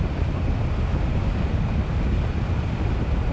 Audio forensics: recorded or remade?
recorded